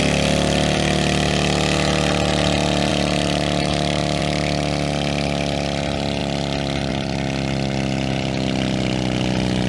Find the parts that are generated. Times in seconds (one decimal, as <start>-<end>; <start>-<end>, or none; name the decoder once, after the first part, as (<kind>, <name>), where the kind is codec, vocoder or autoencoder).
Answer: 2.9-4.2 (vocoder, BigVGAN v2)